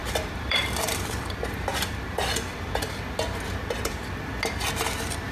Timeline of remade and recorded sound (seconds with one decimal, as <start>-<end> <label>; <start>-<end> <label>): 0.0-1.2 remade; 1.2-1.7 recorded; 1.7-3.0 remade; 3.0-5.3 recorded